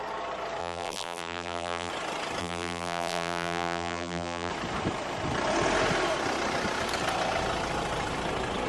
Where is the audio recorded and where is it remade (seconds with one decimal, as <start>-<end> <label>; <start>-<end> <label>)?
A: 0.0-0.6 recorded; 0.6-1.9 remade; 1.9-2.4 recorded; 2.4-4.5 remade; 4.5-8.7 recorded